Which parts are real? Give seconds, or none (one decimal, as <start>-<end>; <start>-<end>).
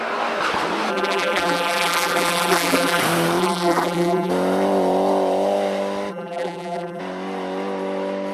0.0-0.9; 3.0-3.4; 4.3-6.1; 7.0-8.3